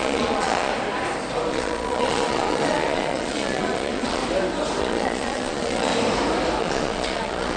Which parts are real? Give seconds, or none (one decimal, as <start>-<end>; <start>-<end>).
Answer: 0.7-1.5; 4.2-4.8; 5.9-6.6